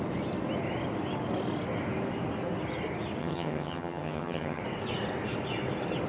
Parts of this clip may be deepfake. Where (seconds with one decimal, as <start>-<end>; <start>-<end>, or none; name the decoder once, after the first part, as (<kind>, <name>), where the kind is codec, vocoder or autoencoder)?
3.2-4.6 (vocoder, HiFi-GAN)